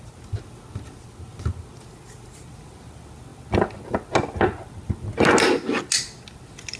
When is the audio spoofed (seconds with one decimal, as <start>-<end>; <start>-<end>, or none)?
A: none